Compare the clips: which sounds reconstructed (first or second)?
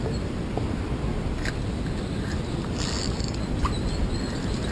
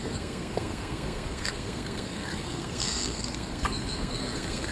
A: second